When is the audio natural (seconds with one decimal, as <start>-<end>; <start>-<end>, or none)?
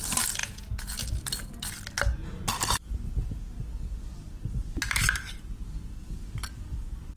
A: 0.0-0.4; 0.9-7.2